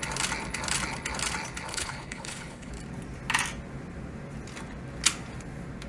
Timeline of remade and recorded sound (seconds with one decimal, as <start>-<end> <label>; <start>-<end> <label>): 0.0-1.7 recorded; 1.7-2.7 remade; 2.7-5.9 recorded